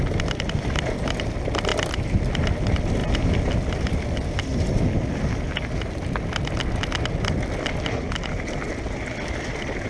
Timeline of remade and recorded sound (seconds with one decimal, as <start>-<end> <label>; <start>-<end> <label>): 0.0-9.9 recorded